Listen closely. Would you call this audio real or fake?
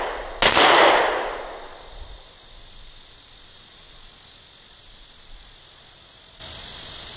real